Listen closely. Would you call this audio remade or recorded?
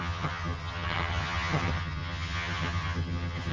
remade